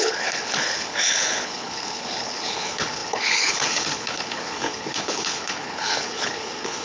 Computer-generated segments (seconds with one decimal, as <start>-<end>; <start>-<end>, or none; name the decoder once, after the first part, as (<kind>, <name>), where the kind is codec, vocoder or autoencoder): 0.0-6.8 (codec, HILCodec)